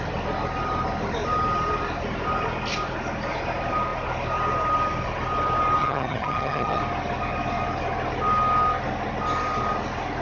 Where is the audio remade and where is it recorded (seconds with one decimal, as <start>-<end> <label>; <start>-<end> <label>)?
0.0-5.8 recorded; 5.8-6.8 remade; 6.8-10.2 recorded